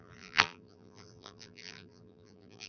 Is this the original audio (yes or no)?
no